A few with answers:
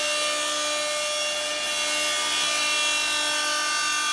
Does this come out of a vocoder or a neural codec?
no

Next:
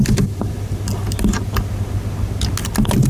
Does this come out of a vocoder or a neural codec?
no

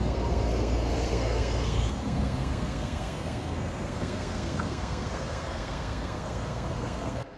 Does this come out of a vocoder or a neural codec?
yes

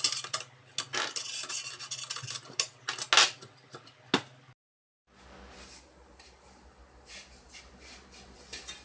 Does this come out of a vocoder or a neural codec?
no